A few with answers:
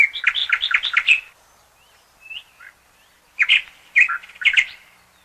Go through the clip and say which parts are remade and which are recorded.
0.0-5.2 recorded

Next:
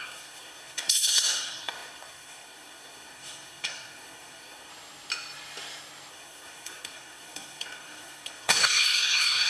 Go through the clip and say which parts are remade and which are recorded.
0.0-4.7 remade; 4.7-6.1 recorded; 6.1-9.5 remade

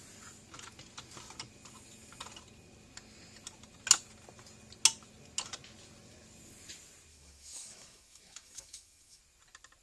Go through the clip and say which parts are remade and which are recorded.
0.0-7.1 recorded; 7.1-9.2 remade; 9.2-9.8 recorded

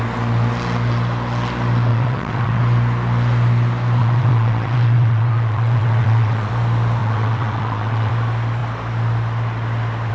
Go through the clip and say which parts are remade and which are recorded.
0.0-1.9 recorded; 1.9-2.6 remade; 2.6-4.0 recorded; 4.0-6.5 remade; 6.5-7.0 recorded; 7.0-8.1 remade; 8.1-10.1 recorded